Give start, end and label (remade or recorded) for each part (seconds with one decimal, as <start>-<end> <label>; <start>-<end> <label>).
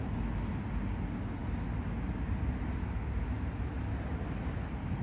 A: 0.0-5.0 recorded